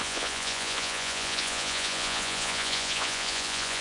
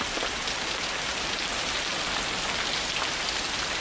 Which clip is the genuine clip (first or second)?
second